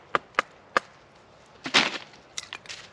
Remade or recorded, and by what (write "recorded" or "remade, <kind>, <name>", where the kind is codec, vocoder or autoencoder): recorded